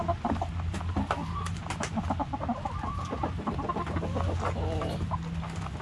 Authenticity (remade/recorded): recorded